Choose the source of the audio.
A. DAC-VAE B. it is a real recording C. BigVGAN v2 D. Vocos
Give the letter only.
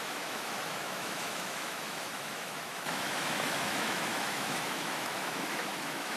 A